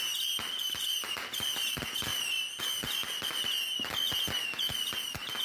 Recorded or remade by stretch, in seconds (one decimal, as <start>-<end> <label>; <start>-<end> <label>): 0.0-5.4 recorded